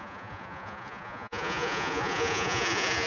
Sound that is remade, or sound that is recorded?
remade